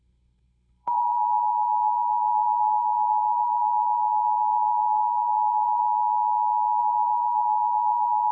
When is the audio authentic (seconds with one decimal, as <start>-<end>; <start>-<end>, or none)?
5.8-6.8